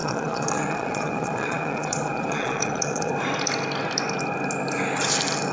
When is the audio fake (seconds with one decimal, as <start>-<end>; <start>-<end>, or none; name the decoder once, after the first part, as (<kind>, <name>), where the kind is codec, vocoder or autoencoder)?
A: 0.0-3.1 (vocoder, Vocos)